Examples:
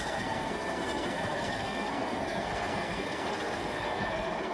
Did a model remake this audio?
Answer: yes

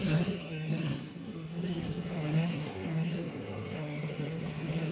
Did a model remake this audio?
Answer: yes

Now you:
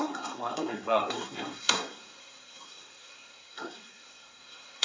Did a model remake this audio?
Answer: yes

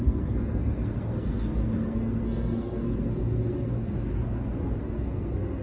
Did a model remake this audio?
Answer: yes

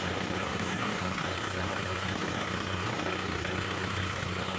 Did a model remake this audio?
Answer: yes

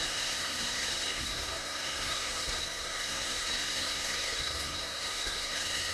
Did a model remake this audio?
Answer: yes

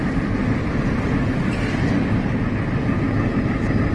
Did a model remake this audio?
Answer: no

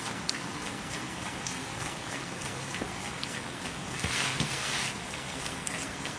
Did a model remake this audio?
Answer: yes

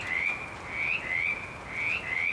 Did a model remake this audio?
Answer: no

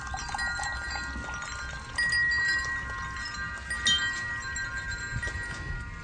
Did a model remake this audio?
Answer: no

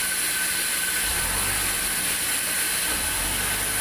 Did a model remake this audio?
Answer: no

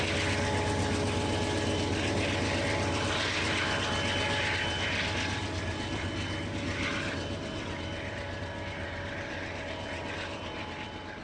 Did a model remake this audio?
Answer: no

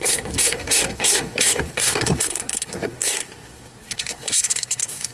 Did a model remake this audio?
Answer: yes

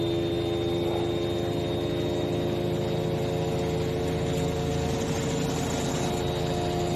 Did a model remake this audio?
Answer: no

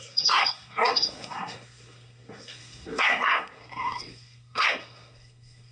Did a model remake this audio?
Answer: yes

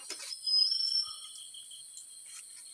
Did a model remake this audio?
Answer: no